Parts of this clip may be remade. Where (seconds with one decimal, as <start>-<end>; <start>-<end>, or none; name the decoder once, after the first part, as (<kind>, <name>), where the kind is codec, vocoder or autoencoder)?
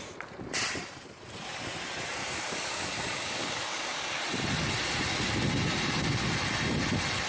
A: 2.2-4.2 (codec, DAC)